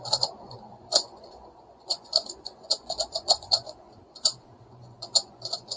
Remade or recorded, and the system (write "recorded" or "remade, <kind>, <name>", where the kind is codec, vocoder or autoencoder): remade, vocoder, Vocos